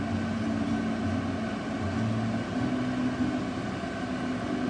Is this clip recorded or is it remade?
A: recorded